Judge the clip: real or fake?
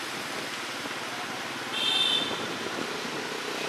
real